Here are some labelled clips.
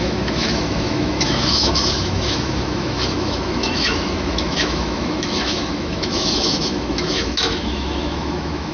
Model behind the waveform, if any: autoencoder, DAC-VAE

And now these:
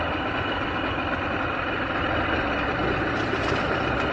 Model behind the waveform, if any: none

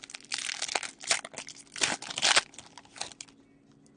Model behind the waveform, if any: none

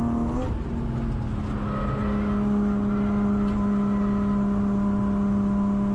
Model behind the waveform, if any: none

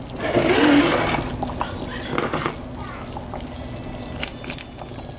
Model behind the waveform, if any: none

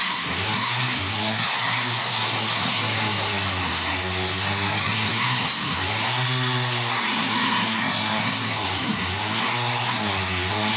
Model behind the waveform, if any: codec, SNAC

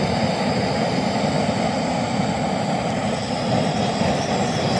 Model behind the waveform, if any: none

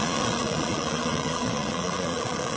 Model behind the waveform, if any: vocoder, Vocos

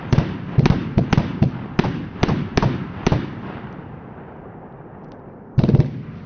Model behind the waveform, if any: none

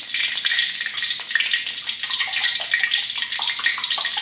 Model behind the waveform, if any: none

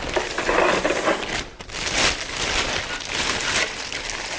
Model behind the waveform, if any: none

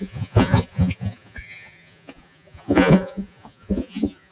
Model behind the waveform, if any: vocoder, Vocos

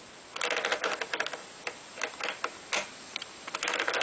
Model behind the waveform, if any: none